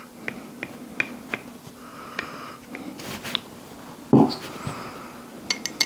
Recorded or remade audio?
recorded